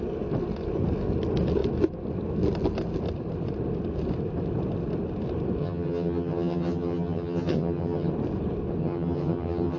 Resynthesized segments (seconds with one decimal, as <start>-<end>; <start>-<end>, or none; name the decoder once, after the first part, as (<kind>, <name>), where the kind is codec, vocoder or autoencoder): 5.6-8.1 (vocoder, HiFi-GAN); 8.8-9.8